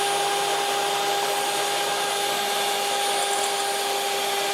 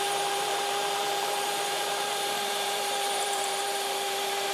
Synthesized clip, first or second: second